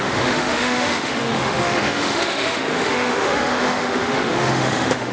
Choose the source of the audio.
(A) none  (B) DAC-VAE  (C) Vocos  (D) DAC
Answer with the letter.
B